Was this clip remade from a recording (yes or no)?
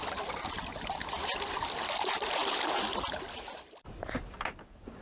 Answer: no